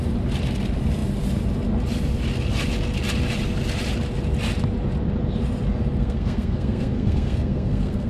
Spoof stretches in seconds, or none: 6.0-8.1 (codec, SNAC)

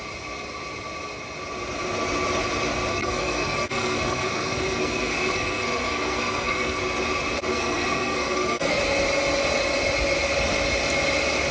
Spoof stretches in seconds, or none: 2.9-6.8 (codec, SNAC); 7.5-8.8

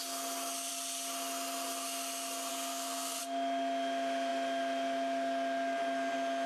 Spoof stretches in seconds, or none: 2.5-3.2 (codec, SNAC)

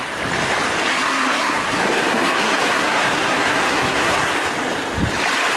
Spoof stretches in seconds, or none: 0.9-4.3 (codec, SNAC)

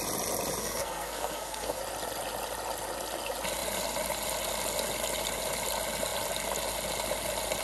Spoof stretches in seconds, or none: 0.6-1.8 (codec, SNAC)

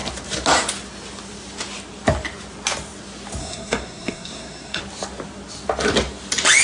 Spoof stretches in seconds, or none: 3.4-4.8 (codec, SNAC)